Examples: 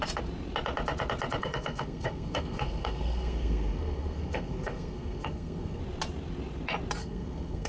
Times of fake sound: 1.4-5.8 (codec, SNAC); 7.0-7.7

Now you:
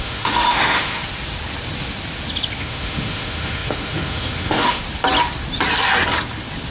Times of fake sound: 0.0-1.0 (autoencoder, DAC-VAE); 2.6-4.8

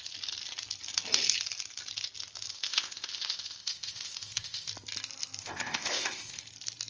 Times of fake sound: 2.5-4.7 (codec, ZipCodec); 5.4-6.4

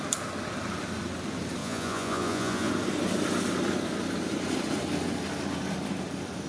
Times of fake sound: 1.6-2.7 (vocoder, Vocos)

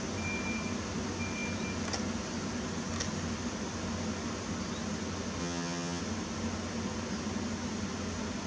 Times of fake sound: 5.4-6.0 (vocoder, HiFi-GAN)

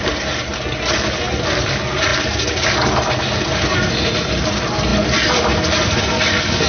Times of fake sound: none

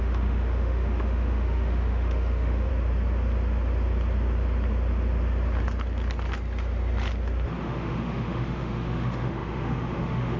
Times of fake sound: 0.0-2.7 (autoencoder, DAC-VAE); 7.6-10.4

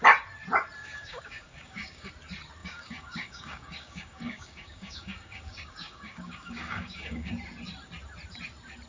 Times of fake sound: 0.8-2.1 (codec, DAC); 2.6-7.3